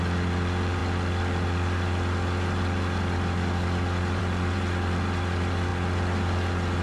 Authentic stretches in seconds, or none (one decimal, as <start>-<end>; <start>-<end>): 0.0-6.8